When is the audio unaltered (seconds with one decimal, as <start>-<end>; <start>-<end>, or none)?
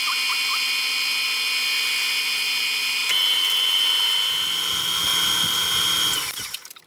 0.0-6.9